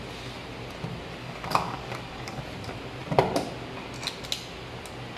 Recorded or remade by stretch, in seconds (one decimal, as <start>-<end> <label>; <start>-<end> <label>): 0.0-1.2 recorded; 1.2-2.4 remade; 2.4-5.2 recorded